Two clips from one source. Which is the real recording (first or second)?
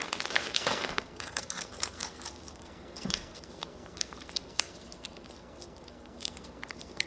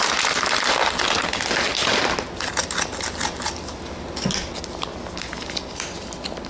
second